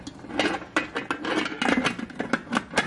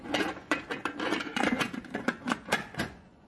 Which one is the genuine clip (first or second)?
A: first